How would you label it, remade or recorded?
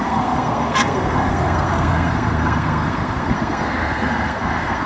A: remade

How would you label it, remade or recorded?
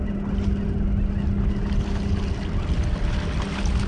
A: recorded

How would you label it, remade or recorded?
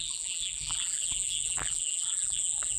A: remade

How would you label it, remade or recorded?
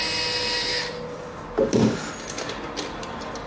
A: recorded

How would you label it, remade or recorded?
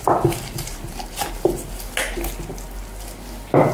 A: recorded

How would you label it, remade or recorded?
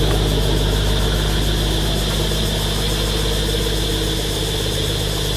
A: recorded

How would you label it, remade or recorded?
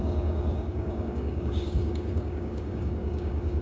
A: remade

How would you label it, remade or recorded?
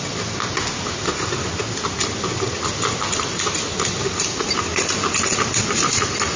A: recorded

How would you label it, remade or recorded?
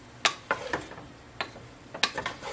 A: recorded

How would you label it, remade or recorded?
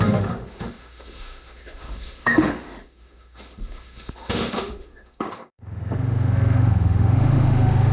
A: remade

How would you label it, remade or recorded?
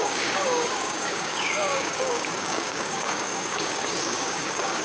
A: remade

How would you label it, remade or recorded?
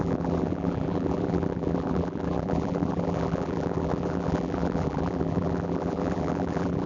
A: remade